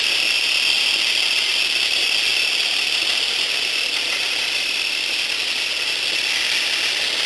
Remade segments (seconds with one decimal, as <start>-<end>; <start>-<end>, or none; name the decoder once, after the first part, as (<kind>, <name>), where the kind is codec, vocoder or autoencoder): none